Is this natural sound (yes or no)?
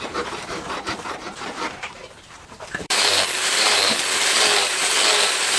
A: no